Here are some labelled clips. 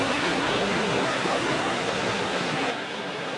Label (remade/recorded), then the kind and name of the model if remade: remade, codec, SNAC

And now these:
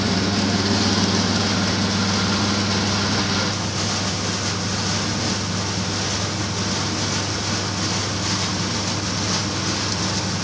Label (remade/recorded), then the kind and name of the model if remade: recorded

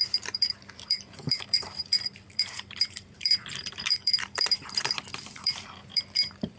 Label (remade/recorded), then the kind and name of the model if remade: remade, vocoder, BigVGAN v2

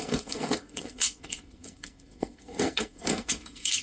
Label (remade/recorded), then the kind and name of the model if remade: remade, codec, SNAC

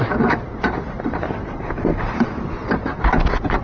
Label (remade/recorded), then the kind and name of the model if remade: recorded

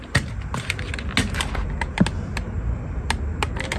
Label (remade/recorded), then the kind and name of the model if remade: recorded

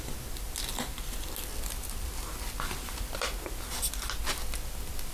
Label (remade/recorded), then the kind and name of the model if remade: recorded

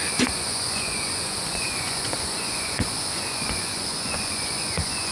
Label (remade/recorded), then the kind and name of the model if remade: remade, vocoder, Vocos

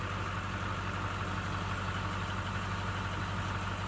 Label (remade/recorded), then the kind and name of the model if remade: recorded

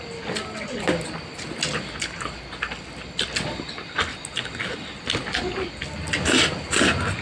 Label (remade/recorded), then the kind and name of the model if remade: recorded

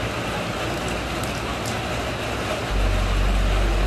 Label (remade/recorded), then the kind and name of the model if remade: recorded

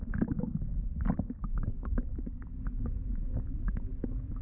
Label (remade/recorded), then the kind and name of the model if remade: recorded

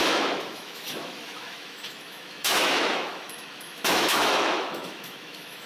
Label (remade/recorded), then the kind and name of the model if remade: remade, autoencoder, DAC-VAE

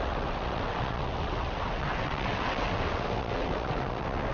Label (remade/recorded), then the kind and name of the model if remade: remade, vocoder, WaveNeXt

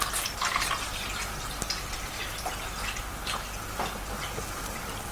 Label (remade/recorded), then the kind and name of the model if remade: recorded